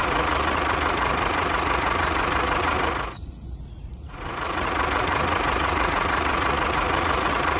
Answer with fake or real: fake